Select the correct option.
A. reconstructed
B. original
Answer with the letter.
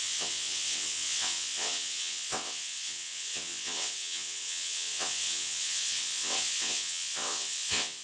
A